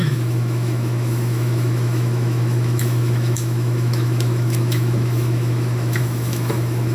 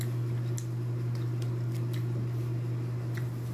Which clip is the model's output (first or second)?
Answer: first